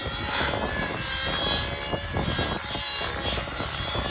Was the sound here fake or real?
real